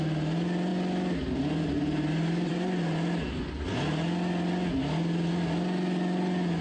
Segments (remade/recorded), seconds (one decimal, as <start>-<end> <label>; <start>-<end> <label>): 0.0-6.6 recorded